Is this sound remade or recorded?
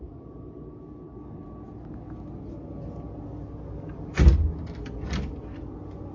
recorded